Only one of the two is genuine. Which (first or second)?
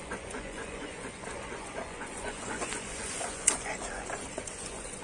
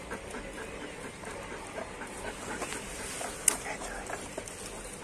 second